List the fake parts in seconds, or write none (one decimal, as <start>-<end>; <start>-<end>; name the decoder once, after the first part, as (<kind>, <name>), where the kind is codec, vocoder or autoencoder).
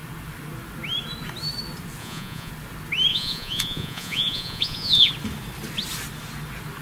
2.0-2.5 (vocoder, Vocos); 3.1-5.1